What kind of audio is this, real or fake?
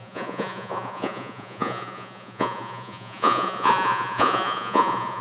fake